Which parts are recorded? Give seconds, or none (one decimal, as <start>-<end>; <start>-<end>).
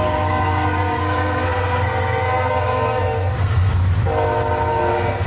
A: 3.8-4.7